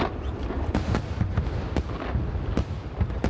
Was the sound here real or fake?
fake